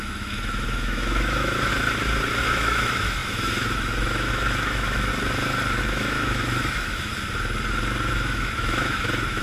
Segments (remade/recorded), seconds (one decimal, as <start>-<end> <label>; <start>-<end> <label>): 0.0-1.7 remade; 1.7-2.4 recorded; 2.4-5.1 remade; 5.1-5.8 recorded; 5.8-7.1 remade; 7.1-8.1 recorded; 8.1-9.4 remade